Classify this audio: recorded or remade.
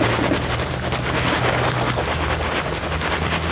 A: recorded